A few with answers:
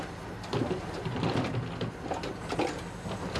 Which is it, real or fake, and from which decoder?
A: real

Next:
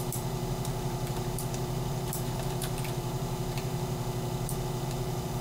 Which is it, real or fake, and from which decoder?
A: fake, vocoder, BigVGAN v2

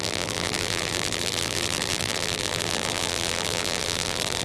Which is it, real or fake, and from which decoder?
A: fake, vocoder, BigVGAN v2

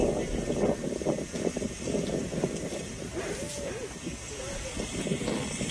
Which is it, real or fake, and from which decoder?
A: fake, vocoder, BigVGAN v2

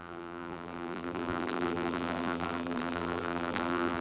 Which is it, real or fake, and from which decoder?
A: fake, vocoder, BigVGAN v2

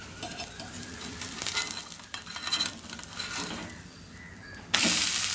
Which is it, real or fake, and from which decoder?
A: fake, vocoder, BigVGAN v2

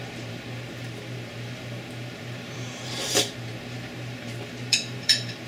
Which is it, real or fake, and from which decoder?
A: fake, vocoder, BigVGAN v2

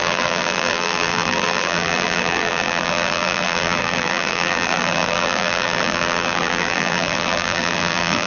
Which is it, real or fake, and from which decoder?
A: fake, vocoder, BigVGAN v2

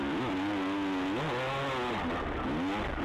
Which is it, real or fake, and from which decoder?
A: real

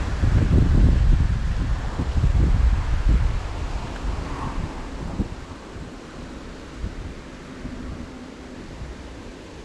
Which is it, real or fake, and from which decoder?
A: real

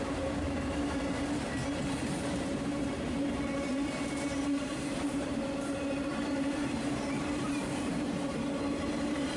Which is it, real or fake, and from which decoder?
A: fake, vocoder, BigVGAN v2